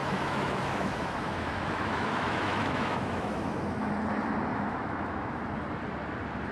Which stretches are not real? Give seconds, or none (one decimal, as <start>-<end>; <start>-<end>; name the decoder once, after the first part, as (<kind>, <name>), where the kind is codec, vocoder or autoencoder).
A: 0.0-3.9 (autoencoder, DAC-VAE); 4.5-5.4